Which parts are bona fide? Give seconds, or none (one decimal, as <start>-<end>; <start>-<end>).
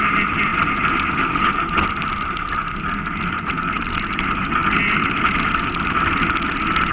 0.5-2.2; 4.6-5.2